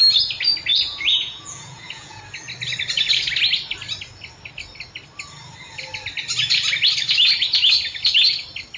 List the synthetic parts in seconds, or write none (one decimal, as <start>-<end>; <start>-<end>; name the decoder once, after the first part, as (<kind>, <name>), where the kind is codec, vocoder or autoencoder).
0.7-2.2 (vocoder, Vocos)